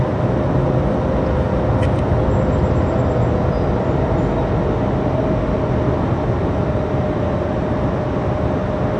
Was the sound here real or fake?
real